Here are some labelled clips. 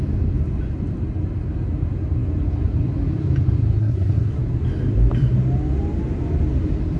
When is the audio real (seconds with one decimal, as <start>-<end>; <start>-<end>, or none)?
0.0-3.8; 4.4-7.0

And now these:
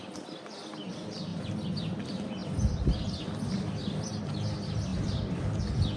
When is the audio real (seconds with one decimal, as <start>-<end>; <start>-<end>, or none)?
0.0-2.4; 4.2-4.9; 5.6-6.0

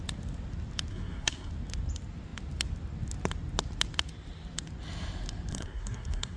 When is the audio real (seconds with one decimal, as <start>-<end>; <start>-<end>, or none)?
0.0-0.9; 1.5-5.5